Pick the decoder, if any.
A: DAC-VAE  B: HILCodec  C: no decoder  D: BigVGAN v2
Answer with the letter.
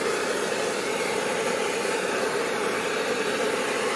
D